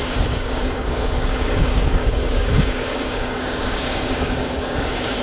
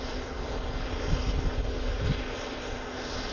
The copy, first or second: first